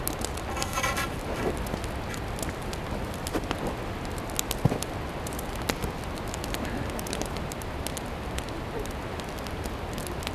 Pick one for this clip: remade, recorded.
recorded